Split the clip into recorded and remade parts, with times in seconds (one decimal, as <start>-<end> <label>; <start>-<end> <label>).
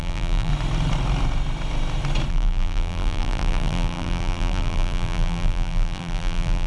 0.0-0.5 remade; 0.5-2.3 recorded; 2.3-6.7 remade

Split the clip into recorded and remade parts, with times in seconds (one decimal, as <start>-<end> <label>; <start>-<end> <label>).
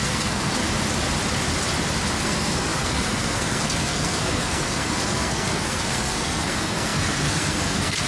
0.0-0.6 remade; 0.6-2.2 recorded; 2.2-8.1 remade